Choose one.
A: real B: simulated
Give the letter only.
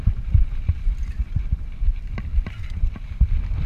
B